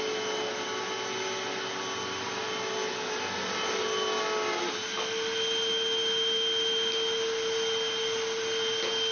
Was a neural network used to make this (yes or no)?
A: no